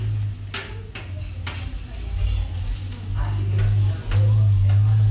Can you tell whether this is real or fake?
real